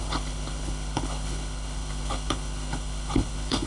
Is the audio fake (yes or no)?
yes